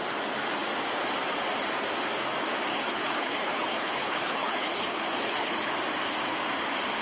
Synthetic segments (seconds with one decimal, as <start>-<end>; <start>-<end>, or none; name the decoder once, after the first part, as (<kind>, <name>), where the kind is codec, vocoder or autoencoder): 2.7-5.7 (codec, HILCodec)